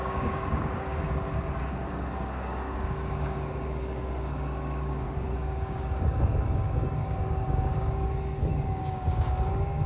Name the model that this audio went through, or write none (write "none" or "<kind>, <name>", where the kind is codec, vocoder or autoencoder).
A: codec, DAC